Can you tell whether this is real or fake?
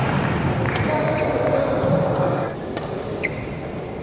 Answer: fake